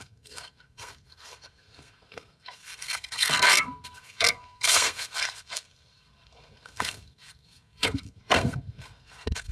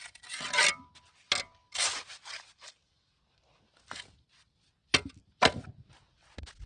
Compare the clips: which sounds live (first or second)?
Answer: second